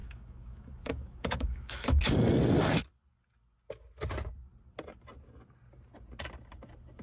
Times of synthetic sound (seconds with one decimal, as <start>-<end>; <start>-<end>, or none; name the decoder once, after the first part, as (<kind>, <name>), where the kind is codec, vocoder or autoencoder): 0.0-2.0 (autoencoder, DAC-VAE)

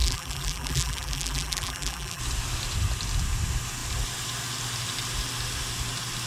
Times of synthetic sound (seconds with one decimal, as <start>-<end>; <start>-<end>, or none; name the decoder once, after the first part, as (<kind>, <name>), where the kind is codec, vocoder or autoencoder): 0.0-2.2 (vocoder, BigVGAN v2)

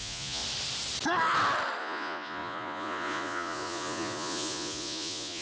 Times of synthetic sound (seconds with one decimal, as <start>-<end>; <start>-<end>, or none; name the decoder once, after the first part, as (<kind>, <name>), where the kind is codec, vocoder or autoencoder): 0.0-0.4 (vocoder, Vocos); 1.8-5.4